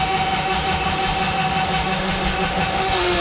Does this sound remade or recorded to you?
remade